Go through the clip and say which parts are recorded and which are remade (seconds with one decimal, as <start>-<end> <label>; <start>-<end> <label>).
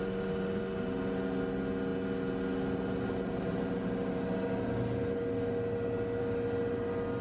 0.0-7.2 recorded